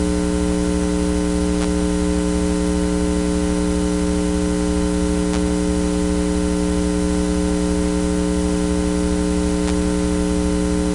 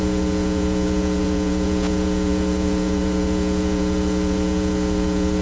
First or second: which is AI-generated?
second